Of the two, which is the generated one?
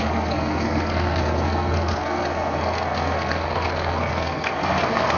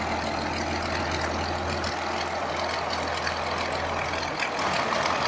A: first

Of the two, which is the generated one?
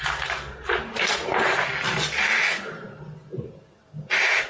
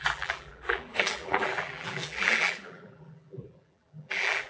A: second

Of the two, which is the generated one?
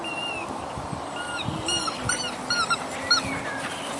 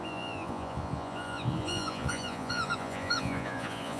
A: second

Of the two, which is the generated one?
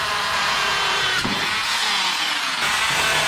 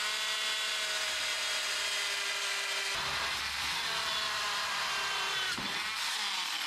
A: first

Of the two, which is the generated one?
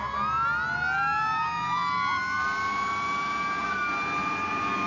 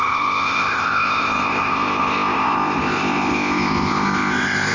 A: second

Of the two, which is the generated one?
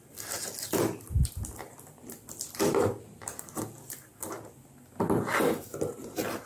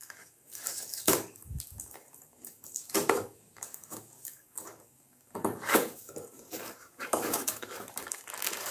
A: second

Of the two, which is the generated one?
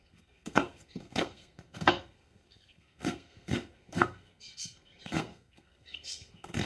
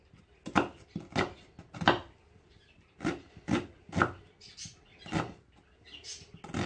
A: first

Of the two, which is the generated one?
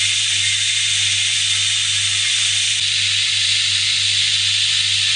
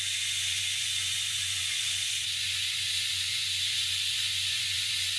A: second